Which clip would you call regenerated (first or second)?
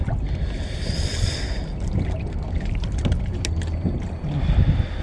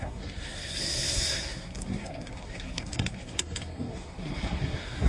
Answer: second